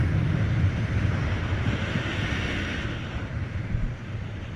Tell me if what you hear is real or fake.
real